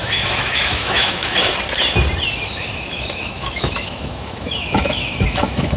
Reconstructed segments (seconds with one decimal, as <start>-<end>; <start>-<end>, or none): 0.0-1.5; 2.3-5.8